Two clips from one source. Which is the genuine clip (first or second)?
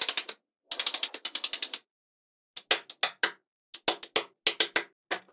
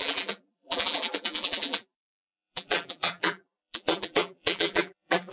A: first